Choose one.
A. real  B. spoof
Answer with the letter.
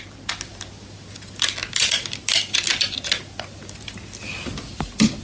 A